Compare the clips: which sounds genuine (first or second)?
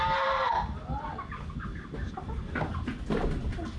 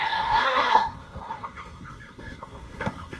first